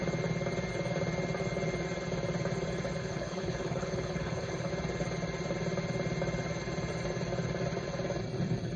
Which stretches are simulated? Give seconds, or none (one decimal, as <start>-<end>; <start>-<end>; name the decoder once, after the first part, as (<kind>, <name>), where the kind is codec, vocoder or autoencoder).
3.0-4.7 (codec, HILCodec)

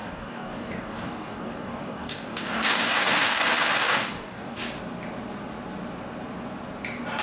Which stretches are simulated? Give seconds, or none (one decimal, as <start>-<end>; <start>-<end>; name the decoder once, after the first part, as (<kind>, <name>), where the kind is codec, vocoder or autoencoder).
0.0-3.4 (codec, DAC); 3.8-4.6

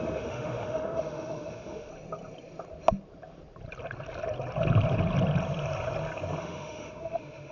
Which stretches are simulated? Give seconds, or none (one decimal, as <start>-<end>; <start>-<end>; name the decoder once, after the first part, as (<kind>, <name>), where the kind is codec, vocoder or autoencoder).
0.0-1.9 (autoencoder, DAC-VAE); 6.4-7.5

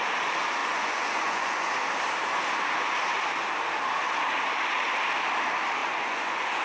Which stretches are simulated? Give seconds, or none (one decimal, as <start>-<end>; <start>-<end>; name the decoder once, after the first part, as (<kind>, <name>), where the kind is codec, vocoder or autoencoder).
0.6-1.7 (vocoder, Vocos); 5.8-6.6

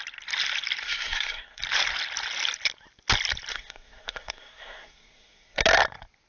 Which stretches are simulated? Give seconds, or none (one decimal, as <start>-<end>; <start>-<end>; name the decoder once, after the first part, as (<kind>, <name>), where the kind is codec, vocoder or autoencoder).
0.8-1.6 (codec, SNAC); 3.5-5.6

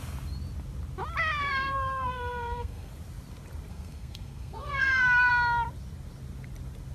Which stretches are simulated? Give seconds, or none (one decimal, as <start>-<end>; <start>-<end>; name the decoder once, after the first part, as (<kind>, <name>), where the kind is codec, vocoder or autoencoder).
1.4-2.9 (codec, SNAC); 3.7-5.3